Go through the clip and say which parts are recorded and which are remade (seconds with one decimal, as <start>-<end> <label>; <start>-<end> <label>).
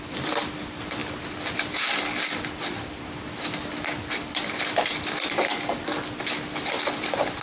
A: 0.0-7.4 recorded